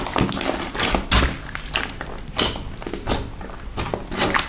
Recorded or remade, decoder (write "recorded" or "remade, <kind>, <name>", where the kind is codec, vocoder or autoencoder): recorded